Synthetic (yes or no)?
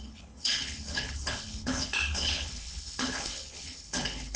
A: yes